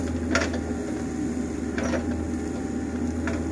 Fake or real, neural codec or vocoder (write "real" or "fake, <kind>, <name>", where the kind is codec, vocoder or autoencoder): real